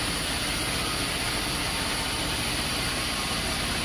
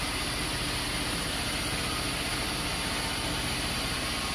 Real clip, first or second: second